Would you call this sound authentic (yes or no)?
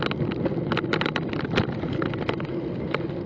yes